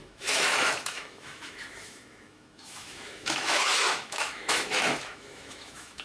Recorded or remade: remade